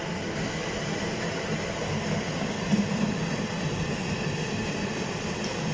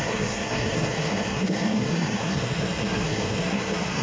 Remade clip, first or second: second